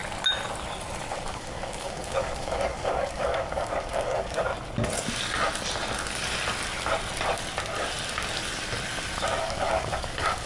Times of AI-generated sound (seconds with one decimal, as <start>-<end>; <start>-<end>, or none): 1.1-4.5; 9.4-10.5

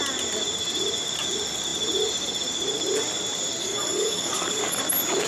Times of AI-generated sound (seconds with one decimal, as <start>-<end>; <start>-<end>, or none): 3.6-4.8

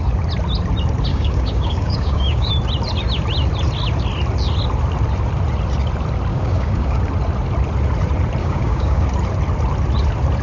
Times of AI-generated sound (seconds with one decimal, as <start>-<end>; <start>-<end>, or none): 1.1-2.5; 6.3-7.0; 8.4-9.1

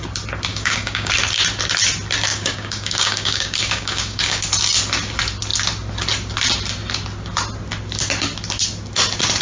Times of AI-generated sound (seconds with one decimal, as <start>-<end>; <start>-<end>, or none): 0.5-1.1; 2.3-4.4

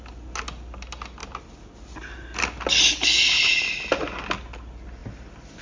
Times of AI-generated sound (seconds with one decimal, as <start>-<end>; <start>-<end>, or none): none

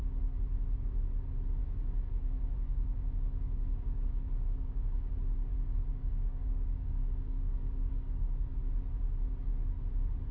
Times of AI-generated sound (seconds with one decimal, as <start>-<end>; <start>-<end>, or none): 1.6-5.1; 5.5-8.5

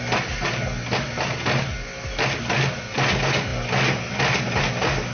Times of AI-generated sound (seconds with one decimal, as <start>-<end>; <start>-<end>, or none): none

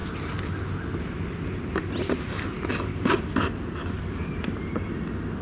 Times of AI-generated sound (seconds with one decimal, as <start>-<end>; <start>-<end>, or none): 3.8-4.3